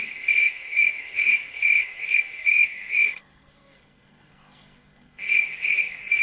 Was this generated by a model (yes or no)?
yes